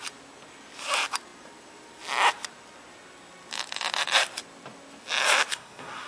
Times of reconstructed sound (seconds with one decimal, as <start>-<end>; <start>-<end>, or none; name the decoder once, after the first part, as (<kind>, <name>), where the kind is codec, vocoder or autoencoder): 5.5-6.1 (codec, SNAC)